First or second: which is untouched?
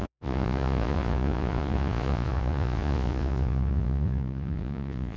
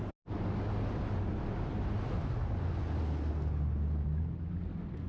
second